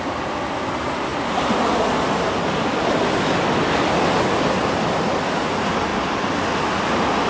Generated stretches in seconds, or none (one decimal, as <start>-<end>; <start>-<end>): none

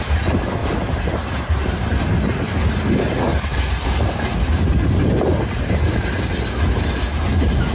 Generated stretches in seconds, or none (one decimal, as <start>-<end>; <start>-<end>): 0.6-2.6